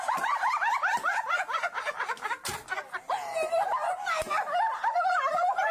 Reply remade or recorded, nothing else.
remade